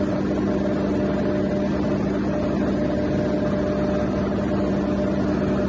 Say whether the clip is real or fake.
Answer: real